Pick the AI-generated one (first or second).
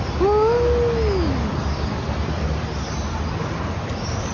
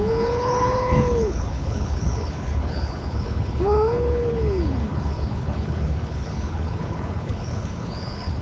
second